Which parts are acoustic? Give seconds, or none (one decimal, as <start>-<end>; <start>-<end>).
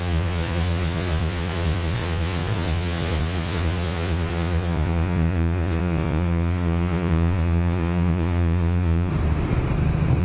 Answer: 9.1-10.2